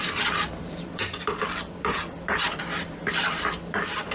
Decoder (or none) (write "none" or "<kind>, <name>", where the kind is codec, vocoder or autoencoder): vocoder, BigVGAN v2